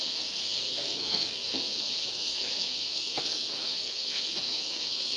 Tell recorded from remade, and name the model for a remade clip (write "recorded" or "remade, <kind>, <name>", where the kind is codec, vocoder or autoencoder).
remade, codec, SNAC